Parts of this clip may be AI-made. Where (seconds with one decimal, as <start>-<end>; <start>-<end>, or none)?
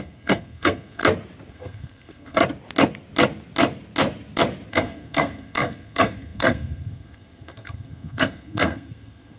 0.0-1.0; 1.5-2.4; 4.7-9.4